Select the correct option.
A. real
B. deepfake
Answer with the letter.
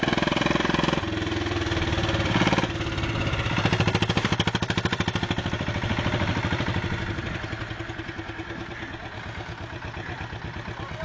B